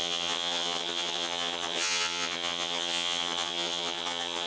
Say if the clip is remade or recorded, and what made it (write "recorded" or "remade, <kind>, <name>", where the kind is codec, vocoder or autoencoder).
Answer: remade, vocoder, HiFi-GAN